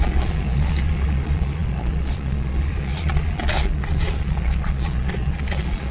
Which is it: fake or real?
fake